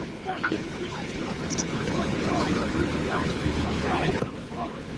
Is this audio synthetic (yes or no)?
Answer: yes